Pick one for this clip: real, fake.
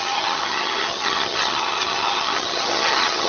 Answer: fake